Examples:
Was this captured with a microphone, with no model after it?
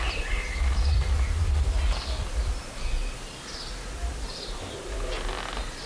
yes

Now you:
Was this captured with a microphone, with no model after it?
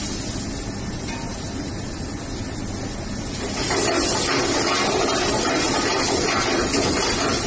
yes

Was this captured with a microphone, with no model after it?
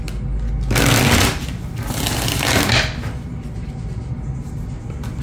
yes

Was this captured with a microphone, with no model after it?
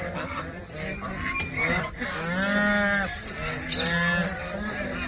yes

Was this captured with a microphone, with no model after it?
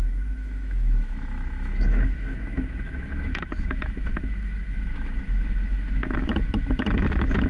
no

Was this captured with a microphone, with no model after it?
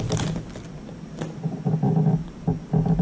yes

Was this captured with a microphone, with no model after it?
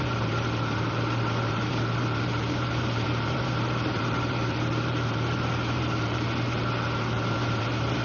no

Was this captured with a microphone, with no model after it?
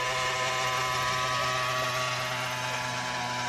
yes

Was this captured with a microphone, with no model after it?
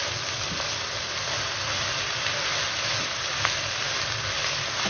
yes